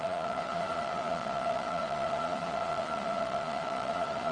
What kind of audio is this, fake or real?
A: fake